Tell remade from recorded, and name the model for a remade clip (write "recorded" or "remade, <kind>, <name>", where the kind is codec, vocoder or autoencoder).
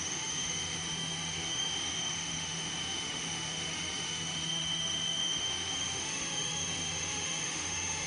remade, autoencoder, DAC-VAE